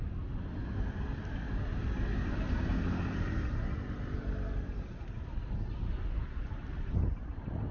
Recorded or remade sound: recorded